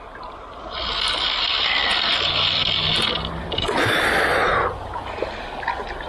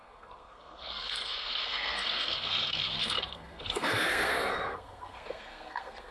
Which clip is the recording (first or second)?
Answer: first